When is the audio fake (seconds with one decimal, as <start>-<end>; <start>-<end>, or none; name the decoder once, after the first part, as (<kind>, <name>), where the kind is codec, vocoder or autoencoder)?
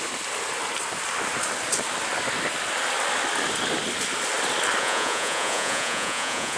4.8-6.6 (vocoder, Vocos)